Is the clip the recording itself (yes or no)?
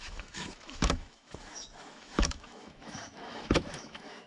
no